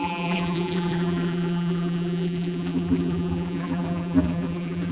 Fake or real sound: fake